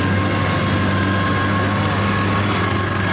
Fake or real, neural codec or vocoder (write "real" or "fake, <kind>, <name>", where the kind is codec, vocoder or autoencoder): real